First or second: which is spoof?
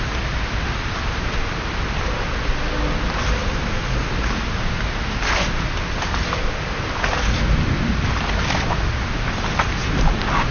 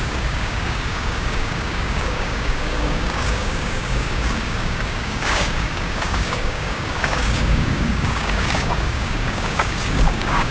second